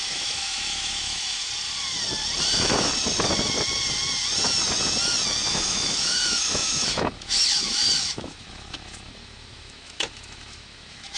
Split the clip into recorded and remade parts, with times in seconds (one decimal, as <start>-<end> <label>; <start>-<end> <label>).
0.0-1.5 remade; 1.5-2.5 recorded; 2.5-2.9 remade; 2.9-5.5 recorded; 5.5-11.2 remade